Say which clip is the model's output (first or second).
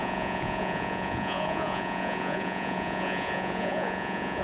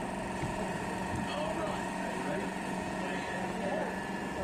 first